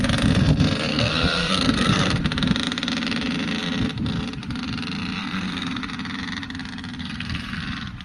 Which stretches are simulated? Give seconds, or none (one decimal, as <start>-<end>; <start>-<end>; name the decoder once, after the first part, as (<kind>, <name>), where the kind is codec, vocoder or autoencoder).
0.9-2.2 (codec, SNAC); 5.2-5.8; 7.0-7.6

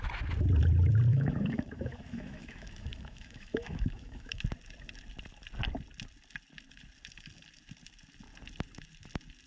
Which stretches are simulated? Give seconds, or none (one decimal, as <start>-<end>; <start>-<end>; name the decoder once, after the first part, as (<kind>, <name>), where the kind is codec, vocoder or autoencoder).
1.1-4.4 (autoencoder, DAC-VAE)

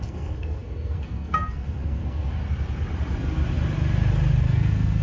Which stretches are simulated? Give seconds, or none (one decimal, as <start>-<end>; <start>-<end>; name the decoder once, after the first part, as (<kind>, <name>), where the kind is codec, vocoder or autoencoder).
0.0-2.4 (codec, SNAC); 4.4-5.0

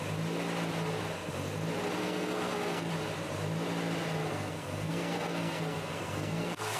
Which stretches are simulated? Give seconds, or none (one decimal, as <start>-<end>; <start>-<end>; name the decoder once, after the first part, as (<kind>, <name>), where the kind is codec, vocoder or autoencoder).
2.0-2.9 (codec, SNAC); 4.2-6.8

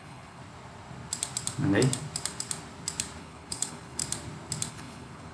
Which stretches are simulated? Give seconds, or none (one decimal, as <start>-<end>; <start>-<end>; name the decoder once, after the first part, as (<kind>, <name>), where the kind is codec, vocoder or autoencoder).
0.0-0.4 (codec, HILCodec); 3.2-4.0; 4.7-5.3

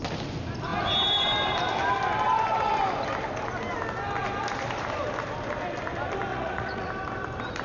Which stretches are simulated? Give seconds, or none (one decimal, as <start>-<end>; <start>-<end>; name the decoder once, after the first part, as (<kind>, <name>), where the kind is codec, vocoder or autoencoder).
6.3-6.9 (vocoder, Vocos)

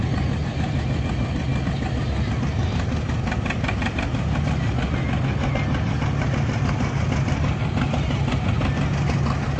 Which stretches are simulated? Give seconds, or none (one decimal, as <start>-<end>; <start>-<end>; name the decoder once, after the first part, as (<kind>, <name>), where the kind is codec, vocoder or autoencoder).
none

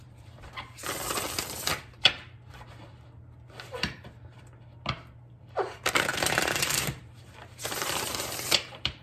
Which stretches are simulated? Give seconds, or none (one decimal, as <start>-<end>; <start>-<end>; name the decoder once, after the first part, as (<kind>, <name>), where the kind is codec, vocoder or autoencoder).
0.0-0.8 (vocoder, BigVGAN v2); 1.8-2.8; 5.4-9.0